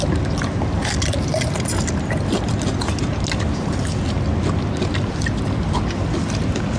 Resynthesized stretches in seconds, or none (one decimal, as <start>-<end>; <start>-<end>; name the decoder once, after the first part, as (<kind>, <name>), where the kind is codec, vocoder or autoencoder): none

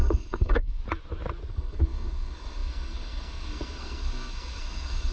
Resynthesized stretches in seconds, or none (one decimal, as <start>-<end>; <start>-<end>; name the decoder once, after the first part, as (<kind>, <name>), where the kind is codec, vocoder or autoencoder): 0.0-0.8 (codec, SNAC); 1.5-5.1

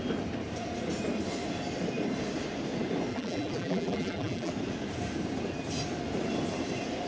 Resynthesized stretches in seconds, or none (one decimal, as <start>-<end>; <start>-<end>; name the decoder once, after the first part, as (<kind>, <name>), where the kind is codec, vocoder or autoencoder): 3.1-4.5 (vocoder, BigVGAN v2)

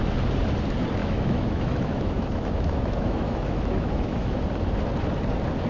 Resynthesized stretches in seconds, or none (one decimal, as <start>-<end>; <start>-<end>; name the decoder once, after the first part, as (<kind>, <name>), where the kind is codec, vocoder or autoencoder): 1.0-4.4 (autoencoder, DAC-VAE)

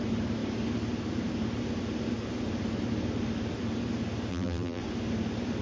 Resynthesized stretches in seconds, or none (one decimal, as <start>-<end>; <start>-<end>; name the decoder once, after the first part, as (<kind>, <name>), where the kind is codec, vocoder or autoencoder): 4.3-4.8 (vocoder, BigVGAN v2)

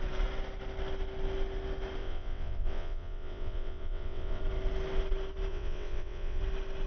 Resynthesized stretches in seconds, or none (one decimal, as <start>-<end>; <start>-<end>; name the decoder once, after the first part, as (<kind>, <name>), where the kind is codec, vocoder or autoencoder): 2.0-4.4 (vocoder, WaveNeXt); 5.5-6.4

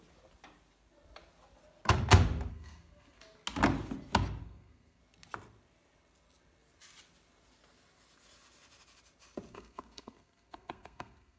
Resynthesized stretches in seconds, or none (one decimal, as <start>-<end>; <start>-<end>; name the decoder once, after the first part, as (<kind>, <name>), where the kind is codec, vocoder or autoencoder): 2.5-3.2 (codec, SNAC); 4.4-5.0; 9.5-11.4